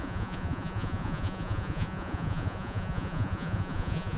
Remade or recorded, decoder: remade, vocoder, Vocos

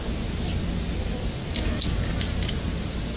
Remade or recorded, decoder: recorded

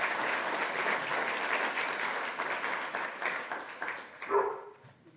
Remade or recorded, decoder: recorded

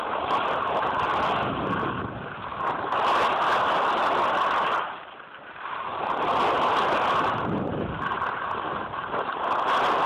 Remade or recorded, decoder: recorded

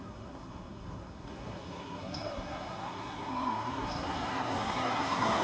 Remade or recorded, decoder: remade, codec, SNAC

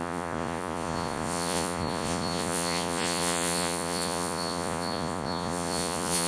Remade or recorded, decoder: remade, vocoder, Vocos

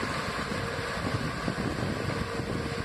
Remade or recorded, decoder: recorded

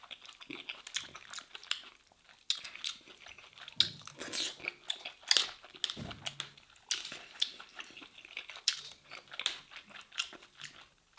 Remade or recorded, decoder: recorded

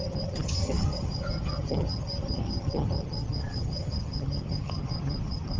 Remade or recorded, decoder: remade, vocoder, HiFi-GAN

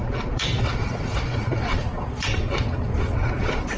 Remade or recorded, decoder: remade, vocoder, Vocos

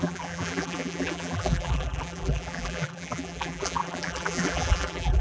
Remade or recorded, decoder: remade, vocoder, BigVGAN v2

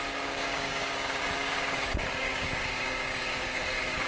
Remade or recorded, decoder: remade, codec, DAC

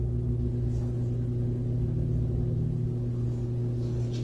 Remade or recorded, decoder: recorded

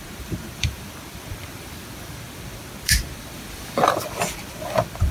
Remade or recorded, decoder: remade, vocoder, BigVGAN v2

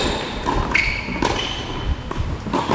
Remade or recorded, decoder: recorded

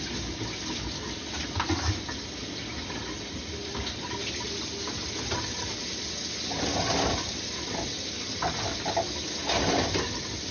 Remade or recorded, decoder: recorded